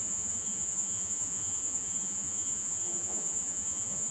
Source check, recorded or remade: remade